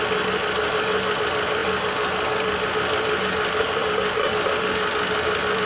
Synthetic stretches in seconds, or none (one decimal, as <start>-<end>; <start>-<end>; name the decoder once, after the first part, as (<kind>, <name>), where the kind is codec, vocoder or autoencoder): none